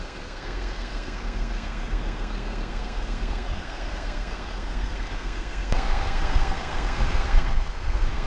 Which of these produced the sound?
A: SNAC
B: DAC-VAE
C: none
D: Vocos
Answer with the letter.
A